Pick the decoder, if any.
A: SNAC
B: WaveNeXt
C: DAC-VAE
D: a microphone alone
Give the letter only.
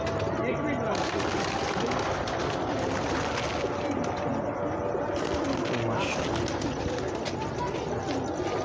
D